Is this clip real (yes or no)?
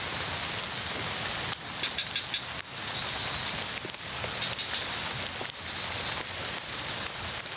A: yes